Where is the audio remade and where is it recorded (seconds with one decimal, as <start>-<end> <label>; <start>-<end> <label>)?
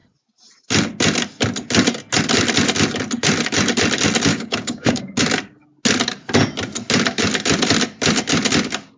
0.0-4.3 recorded; 4.3-5.0 remade; 5.0-9.0 recorded